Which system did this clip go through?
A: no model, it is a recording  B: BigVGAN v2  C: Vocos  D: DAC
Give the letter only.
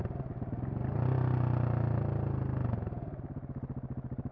A